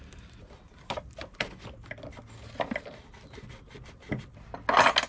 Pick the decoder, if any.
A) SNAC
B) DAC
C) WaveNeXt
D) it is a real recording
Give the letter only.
D